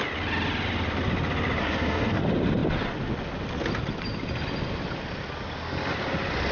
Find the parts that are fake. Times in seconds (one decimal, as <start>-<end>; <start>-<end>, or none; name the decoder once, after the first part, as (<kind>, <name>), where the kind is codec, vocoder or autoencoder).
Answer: 1.6-2.2 (codec, SNAC)